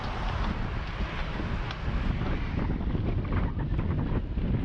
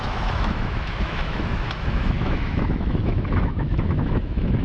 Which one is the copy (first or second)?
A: second